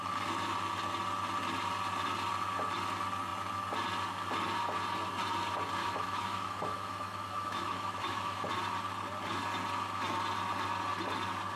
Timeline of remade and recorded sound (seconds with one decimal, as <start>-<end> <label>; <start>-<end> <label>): 0.0-5.8 recorded; 5.8-8.5 remade; 8.5-11.6 recorded